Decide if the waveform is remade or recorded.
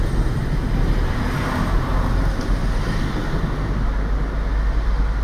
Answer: recorded